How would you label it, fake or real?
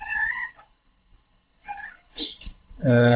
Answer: fake